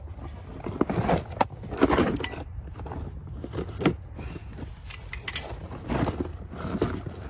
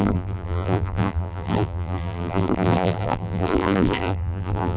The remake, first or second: second